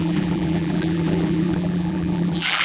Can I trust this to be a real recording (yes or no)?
no